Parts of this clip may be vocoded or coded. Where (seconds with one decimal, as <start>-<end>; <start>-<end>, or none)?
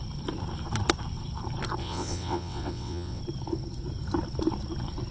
1.8-3.2